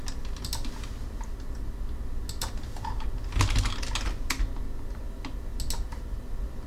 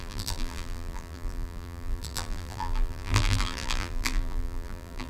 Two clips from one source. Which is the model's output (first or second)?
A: second